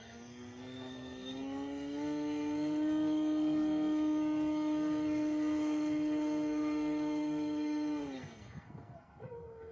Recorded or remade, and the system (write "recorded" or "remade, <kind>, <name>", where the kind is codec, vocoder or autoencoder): remade, codec, SNAC